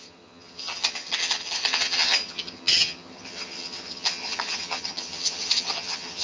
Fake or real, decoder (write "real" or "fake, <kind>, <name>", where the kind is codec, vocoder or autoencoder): fake, vocoder, HiFi-GAN